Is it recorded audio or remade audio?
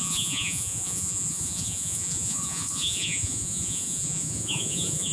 remade